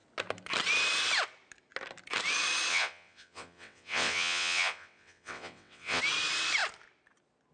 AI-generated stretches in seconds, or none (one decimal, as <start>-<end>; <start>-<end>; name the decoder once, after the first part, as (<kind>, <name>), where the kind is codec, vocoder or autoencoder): 2.7-6.0 (vocoder, WaveNeXt)

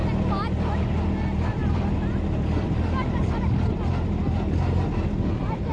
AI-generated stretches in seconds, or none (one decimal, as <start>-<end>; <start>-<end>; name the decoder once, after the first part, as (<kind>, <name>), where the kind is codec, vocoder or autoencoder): none

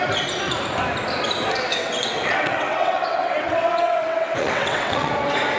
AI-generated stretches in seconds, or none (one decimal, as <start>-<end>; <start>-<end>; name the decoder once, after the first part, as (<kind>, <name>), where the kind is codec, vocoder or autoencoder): 1.7-5.1 (vocoder, WaveNeXt)

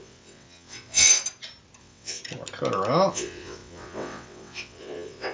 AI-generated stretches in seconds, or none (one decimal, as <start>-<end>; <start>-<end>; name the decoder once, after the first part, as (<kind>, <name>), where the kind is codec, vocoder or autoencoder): 0.0-1.2 (vocoder, WaveNeXt); 1.8-2.2; 3.1-5.3

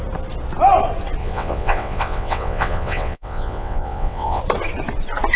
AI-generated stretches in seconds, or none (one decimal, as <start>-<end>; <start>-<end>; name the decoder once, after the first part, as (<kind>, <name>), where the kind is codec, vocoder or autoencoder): 1.2-4.4 (vocoder, WaveNeXt)

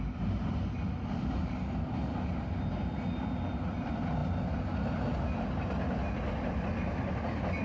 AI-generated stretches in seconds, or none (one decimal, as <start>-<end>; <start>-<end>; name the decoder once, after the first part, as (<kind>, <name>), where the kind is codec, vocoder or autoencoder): none

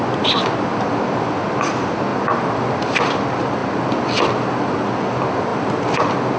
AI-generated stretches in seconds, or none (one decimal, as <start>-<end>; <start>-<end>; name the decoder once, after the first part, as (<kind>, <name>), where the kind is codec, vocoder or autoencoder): none

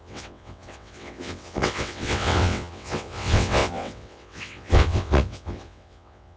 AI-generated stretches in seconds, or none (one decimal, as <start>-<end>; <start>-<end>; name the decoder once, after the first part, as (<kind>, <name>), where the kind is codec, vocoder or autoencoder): 0.0-6.4 (vocoder, WaveNeXt)